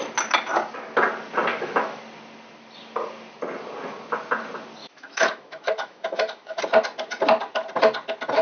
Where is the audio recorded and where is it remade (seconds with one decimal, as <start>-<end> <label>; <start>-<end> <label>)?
0.0-1.5 recorded; 1.5-2.0 remade; 2.0-4.8 recorded; 4.8-6.6 remade; 6.6-8.4 recorded